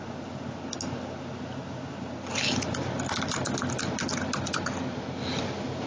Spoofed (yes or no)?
no